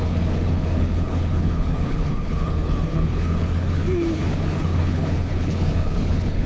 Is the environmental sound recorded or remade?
remade